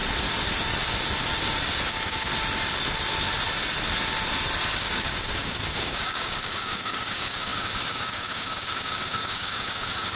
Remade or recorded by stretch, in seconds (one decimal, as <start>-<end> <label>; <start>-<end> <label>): 0.0-1.9 recorded; 1.9-2.3 remade; 2.3-4.8 recorded; 4.8-10.2 remade